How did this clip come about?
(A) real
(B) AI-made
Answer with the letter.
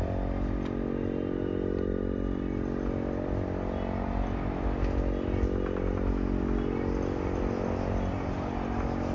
A